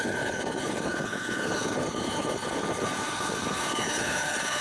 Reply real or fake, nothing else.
fake